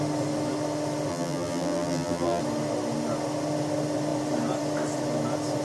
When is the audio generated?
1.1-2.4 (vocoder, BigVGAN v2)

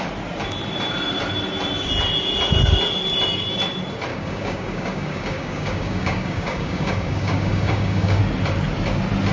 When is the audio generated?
4.1-8.2 (codec, DAC)

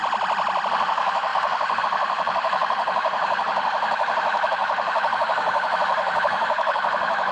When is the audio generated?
0.7-7.3 (autoencoder, DAC-VAE)

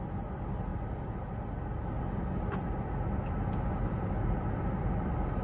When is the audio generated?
none

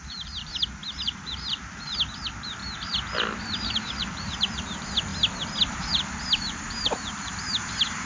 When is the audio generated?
0.0-2.6 (vocoder, BigVGAN v2); 3.4-5.1; 5.7-8.1